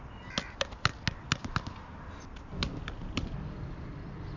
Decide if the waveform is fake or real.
real